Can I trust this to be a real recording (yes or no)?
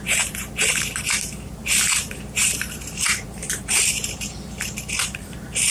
no